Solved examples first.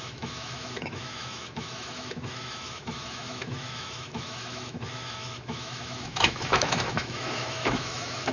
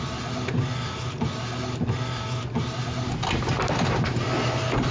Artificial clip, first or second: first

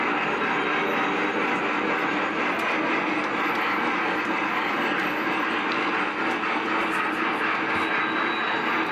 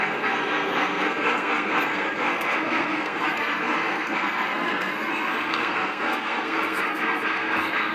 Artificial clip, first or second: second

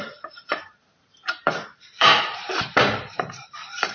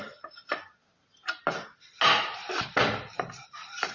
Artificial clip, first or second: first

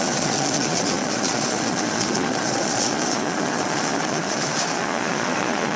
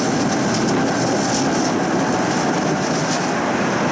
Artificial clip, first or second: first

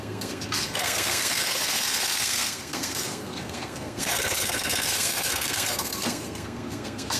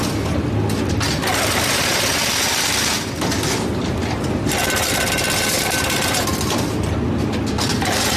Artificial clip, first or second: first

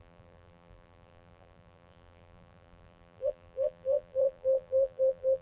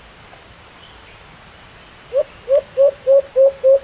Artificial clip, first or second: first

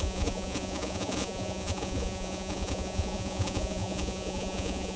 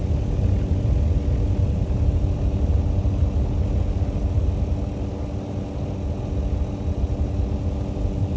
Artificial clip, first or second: first